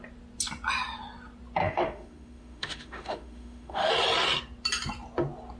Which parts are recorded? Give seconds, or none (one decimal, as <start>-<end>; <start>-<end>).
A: 0.0-1.6; 3.9-5.6